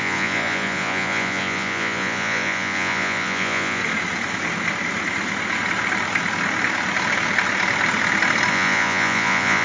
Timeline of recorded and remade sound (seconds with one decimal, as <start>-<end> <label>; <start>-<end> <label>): 0.0-3.8 remade; 3.8-8.5 recorded; 8.5-9.6 remade